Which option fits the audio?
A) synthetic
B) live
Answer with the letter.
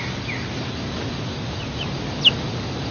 B